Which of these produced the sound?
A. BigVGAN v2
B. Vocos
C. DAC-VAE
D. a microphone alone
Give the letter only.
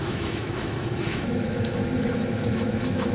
C